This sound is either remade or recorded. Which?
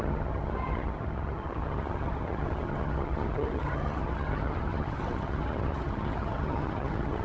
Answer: remade